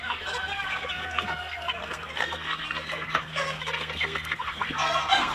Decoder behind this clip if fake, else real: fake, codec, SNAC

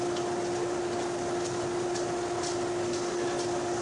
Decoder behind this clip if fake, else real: real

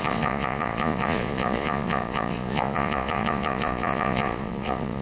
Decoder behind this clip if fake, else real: fake, vocoder, Vocos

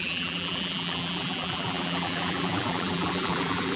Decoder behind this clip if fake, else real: fake, vocoder, BigVGAN v2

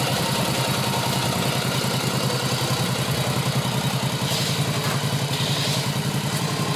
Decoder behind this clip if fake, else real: real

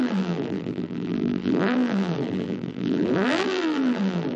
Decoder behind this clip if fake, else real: fake, vocoder, BigVGAN v2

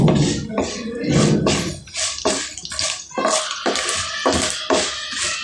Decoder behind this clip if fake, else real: real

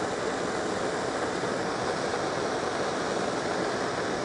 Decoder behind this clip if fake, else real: real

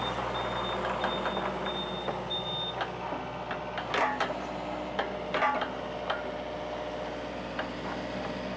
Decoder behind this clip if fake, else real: real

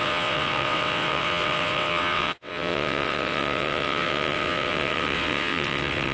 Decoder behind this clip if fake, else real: fake, vocoder, WaveNeXt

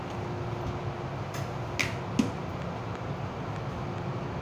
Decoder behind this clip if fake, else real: real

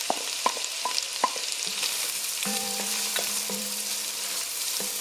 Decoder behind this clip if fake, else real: fake, vocoder, BigVGAN v2